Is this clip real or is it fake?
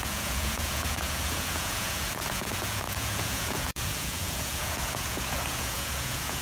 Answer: fake